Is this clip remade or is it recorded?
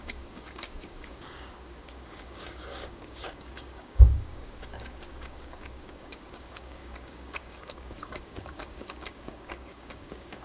remade